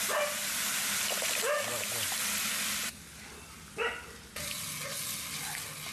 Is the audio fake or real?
real